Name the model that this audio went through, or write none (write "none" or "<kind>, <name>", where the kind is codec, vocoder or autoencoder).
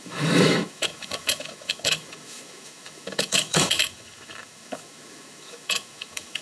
autoencoder, DAC-VAE